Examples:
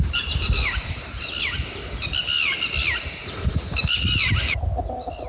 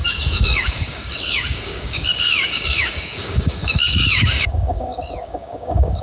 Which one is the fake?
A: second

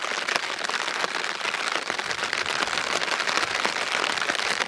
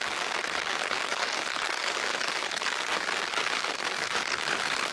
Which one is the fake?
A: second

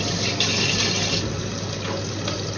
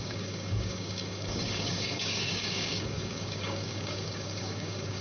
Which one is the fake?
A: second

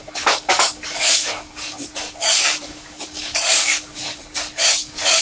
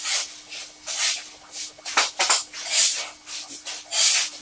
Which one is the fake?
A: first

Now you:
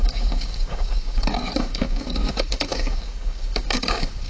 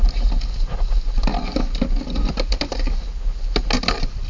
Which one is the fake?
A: first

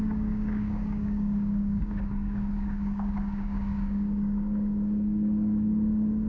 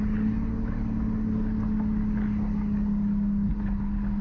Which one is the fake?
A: first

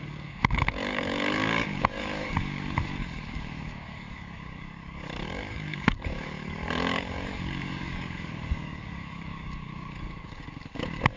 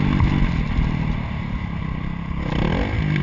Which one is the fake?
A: first